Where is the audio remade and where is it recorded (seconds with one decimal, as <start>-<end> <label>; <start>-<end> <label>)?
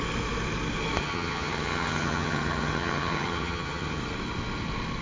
0.0-1.0 recorded; 1.0-4.0 remade; 4.0-5.0 recorded